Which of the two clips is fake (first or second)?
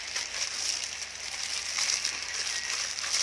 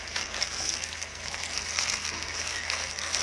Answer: second